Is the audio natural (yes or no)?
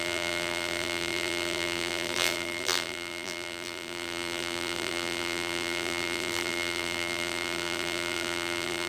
no